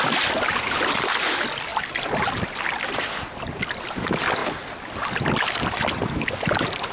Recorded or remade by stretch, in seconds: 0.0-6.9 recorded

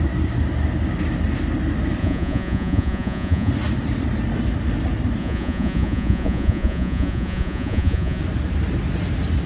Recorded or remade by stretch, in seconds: 0.0-2.0 recorded; 2.0-3.5 remade; 3.5-5.2 recorded; 5.2-8.2 remade; 8.2-9.5 recorded